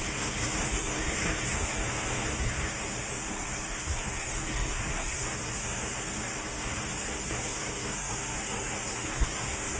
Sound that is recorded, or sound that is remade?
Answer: remade